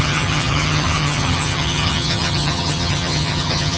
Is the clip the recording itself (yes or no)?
no